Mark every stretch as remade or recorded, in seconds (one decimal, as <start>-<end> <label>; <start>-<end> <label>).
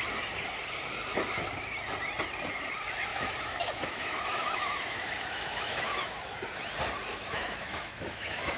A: 0.0-3.1 recorded; 3.1-6.2 remade; 6.2-7.1 recorded; 7.1-8.6 remade